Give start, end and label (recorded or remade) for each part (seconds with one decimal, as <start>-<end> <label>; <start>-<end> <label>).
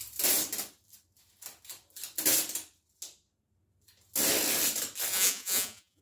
0.0-5.1 recorded; 5.1-6.0 remade